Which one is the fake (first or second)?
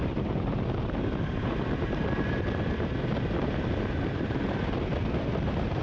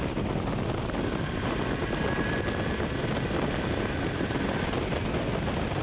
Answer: first